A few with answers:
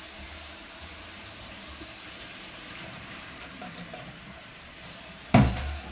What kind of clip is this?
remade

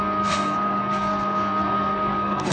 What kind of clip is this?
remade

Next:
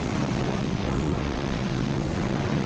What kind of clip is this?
remade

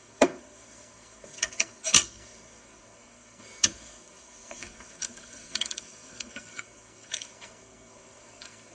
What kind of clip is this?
remade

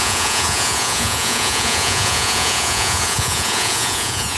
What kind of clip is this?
remade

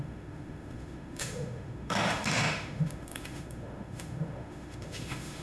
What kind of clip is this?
remade